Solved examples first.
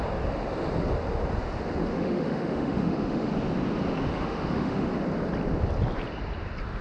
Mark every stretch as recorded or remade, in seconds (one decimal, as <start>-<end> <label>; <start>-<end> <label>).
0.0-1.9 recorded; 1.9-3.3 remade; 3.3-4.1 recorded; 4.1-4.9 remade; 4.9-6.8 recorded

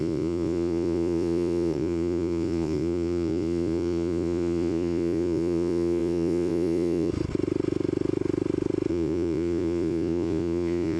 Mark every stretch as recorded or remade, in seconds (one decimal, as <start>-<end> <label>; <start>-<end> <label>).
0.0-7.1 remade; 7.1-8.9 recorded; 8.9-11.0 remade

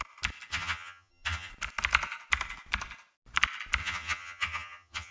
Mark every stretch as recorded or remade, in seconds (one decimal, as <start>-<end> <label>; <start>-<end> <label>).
0.0-0.5 recorded; 0.5-1.5 remade; 1.5-3.8 recorded; 3.8-5.1 remade

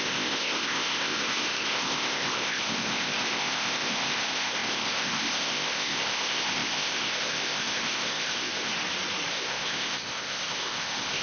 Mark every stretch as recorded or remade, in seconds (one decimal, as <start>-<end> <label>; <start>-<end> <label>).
0.0-8.7 remade; 8.7-9.3 recorded; 9.3-11.2 remade